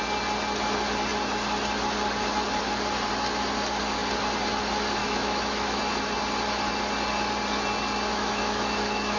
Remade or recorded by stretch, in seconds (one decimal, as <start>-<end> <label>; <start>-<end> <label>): 0.0-5.0 recorded; 5.0-5.8 remade; 5.8-8.1 recorded; 8.1-9.2 remade